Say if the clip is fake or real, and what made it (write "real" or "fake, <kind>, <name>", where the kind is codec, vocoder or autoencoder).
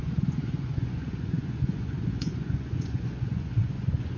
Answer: fake, vocoder, Vocos